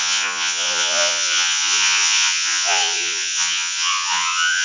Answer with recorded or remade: remade